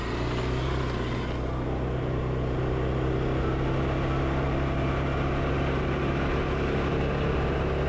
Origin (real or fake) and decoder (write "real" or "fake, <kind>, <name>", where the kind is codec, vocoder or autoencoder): real